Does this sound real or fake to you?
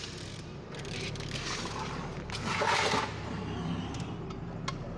real